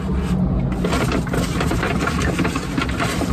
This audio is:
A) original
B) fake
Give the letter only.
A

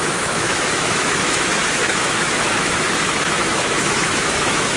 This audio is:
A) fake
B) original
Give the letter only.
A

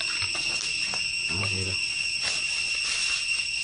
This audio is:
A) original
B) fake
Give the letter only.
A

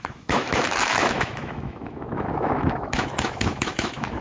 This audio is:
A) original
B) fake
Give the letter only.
B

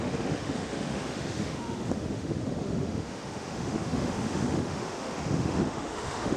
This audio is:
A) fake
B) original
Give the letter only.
A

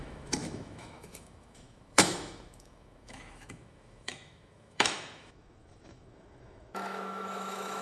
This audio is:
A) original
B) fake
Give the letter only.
B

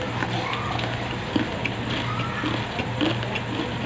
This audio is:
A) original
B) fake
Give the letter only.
A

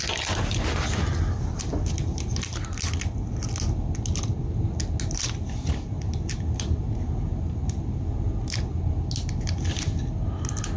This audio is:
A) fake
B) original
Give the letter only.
B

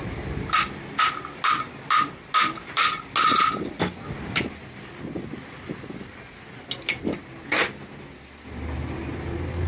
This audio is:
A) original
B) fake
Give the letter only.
A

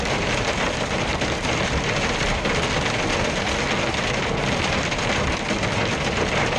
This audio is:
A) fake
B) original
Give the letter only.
B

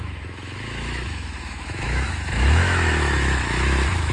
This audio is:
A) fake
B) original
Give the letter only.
A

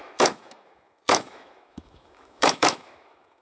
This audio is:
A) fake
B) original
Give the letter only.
A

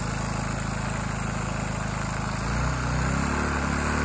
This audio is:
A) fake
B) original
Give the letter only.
B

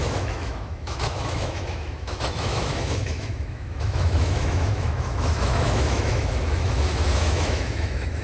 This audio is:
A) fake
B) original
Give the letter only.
A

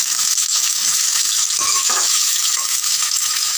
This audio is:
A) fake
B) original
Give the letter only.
A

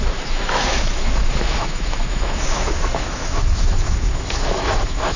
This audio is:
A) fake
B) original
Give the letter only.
A